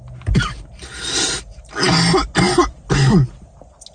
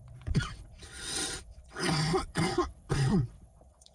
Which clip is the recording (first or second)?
first